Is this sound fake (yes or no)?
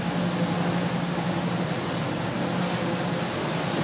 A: no